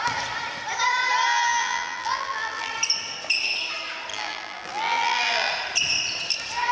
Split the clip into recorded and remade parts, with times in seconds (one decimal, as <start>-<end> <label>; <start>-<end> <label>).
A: 0.0-1.3 recorded; 1.3-2.7 remade; 2.7-4.1 recorded; 4.1-5.5 remade; 5.5-6.7 recorded